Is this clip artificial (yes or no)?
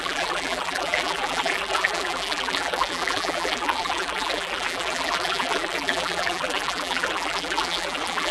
yes